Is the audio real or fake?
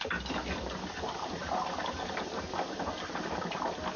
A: real